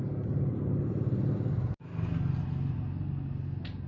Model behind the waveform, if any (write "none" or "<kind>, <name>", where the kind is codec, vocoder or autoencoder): none